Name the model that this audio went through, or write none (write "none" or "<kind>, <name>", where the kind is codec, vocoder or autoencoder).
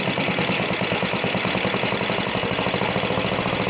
none